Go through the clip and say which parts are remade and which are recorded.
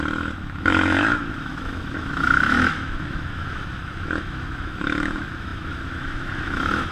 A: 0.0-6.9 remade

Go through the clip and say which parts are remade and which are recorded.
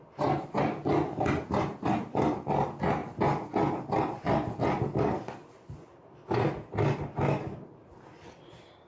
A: 0.0-8.9 recorded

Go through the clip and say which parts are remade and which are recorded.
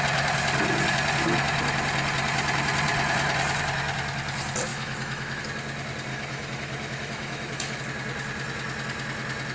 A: 0.0-4.7 recorded; 4.7-5.4 remade; 5.4-6.1 recorded; 6.1-7.8 remade; 7.8-9.5 recorded